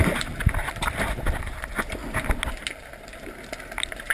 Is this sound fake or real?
real